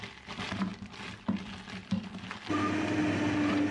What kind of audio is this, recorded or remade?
recorded